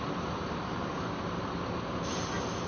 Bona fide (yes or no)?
yes